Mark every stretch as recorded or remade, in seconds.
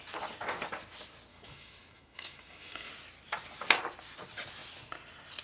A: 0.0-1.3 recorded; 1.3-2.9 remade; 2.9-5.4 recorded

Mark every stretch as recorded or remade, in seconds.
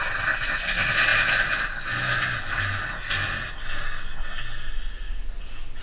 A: 0.0-5.8 recorded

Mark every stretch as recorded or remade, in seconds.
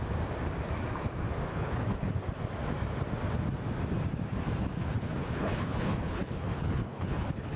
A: 0.0-1.5 recorded; 1.5-2.1 remade; 2.1-4.8 recorded; 4.8-7.6 remade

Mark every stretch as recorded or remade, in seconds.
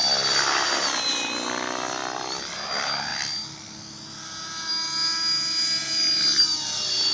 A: 0.0-7.1 recorded